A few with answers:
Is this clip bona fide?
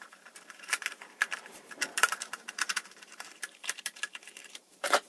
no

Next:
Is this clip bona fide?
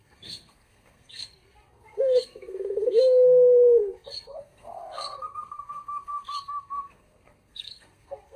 no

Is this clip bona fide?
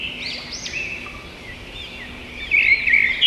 yes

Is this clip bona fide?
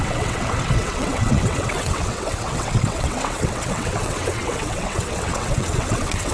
no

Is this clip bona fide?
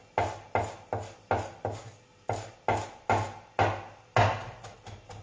yes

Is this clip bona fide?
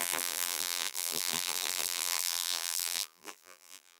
no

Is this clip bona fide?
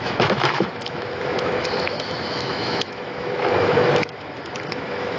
no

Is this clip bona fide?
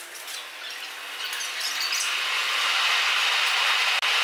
yes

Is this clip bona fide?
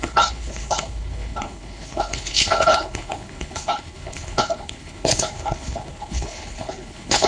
no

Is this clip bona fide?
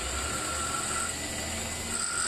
yes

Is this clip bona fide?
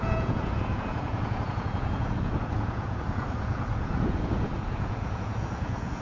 no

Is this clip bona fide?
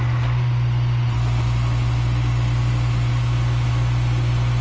yes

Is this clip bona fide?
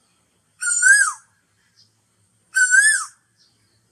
no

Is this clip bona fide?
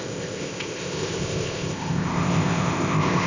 no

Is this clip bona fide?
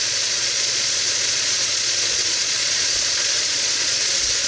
no